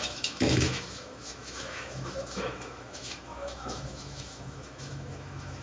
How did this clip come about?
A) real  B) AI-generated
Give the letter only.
B